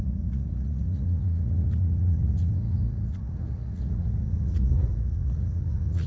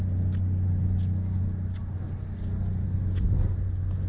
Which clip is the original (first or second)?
second